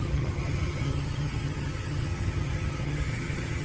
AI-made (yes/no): yes